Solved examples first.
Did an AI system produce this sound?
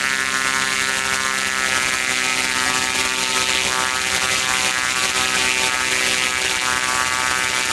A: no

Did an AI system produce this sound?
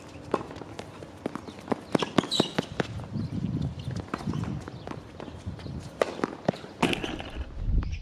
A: no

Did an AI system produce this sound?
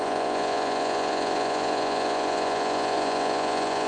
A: yes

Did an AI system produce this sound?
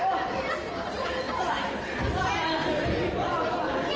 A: yes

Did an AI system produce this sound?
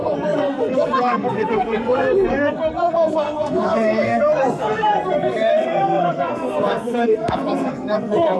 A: yes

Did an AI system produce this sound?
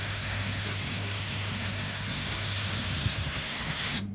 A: yes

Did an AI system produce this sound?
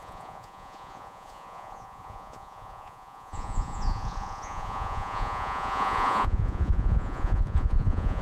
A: yes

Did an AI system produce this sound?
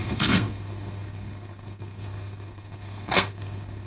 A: yes